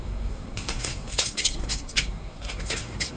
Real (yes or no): no